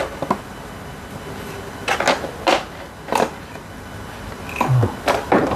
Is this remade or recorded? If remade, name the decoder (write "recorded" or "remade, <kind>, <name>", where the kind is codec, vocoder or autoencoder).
recorded